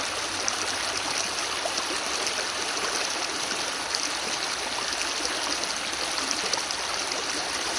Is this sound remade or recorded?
recorded